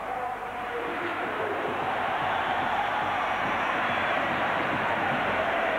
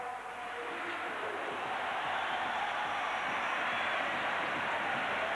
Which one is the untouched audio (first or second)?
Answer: second